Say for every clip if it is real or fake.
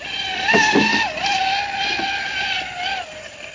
real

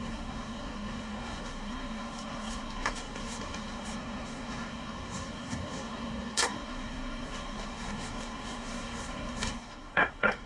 fake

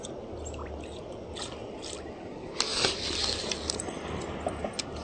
real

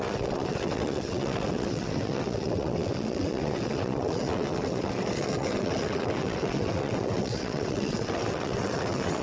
fake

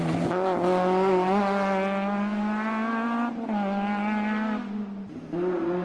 real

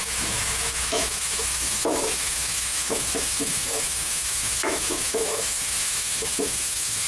fake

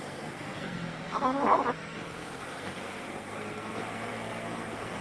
fake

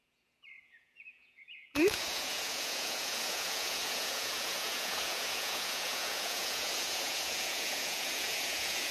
fake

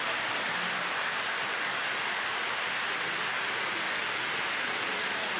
real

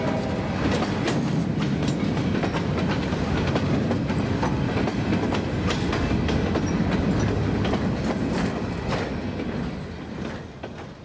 real